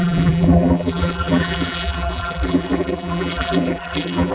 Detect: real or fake fake